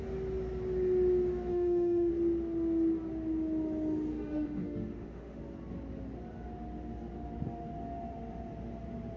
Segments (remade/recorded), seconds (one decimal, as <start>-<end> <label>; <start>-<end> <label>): 0.0-1.5 recorded; 1.5-2.1 remade; 2.1-4.1 recorded; 4.1-5.4 remade; 5.4-9.2 recorded